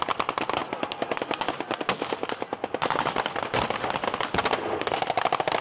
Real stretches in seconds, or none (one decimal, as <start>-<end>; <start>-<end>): 0.0-5.6